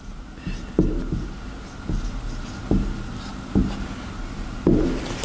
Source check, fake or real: real